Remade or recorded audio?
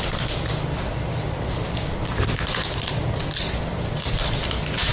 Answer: recorded